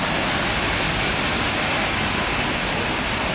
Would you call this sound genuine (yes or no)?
yes